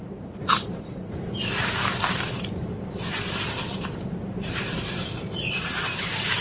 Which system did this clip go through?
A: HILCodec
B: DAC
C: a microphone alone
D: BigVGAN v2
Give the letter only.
D